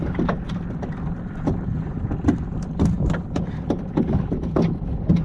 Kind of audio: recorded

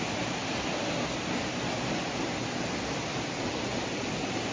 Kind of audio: recorded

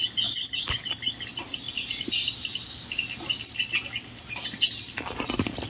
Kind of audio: recorded